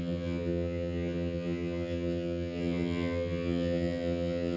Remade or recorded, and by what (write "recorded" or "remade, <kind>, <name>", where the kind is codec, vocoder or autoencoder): remade, vocoder, HiFi-GAN